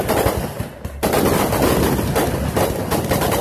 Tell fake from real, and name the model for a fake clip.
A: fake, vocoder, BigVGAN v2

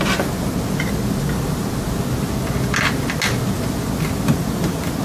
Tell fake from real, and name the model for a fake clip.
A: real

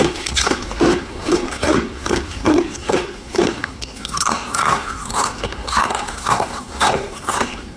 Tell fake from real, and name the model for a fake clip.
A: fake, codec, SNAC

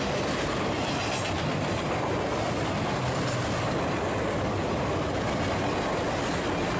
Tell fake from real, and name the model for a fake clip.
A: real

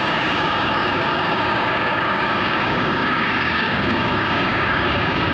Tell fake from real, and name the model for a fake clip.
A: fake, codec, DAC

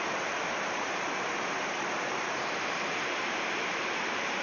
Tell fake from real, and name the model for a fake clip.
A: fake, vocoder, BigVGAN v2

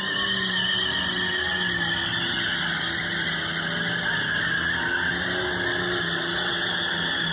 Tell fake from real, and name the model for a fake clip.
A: real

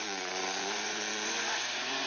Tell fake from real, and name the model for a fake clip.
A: fake, vocoder, Vocos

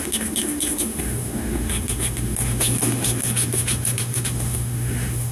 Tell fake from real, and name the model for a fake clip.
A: fake, autoencoder, DAC-VAE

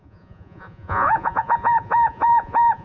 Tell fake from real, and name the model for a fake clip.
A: fake, vocoder, Vocos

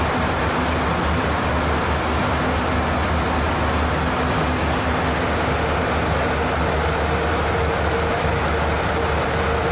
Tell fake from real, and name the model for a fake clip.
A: real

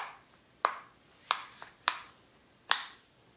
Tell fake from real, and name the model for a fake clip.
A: real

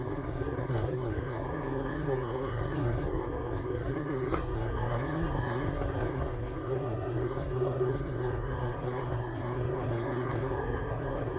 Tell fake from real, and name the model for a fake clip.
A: fake, codec, SNAC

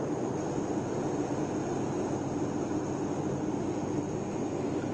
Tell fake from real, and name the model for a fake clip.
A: real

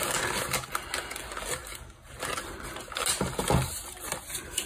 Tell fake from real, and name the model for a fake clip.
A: real